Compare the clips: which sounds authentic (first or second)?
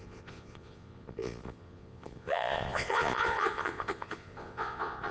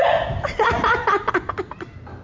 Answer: second